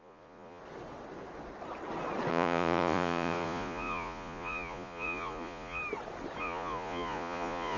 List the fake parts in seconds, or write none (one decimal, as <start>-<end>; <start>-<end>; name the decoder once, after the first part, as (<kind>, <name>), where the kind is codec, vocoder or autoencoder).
0.0-0.6 (vocoder, Vocos); 2.3-5.8; 6.4-7.8